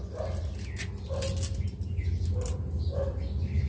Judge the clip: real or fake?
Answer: real